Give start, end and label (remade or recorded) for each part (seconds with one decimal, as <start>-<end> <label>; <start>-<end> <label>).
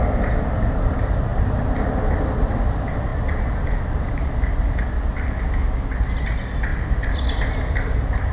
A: 0.0-1.3 recorded; 1.3-1.9 remade; 1.9-8.3 recorded